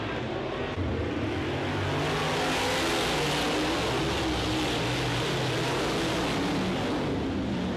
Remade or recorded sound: recorded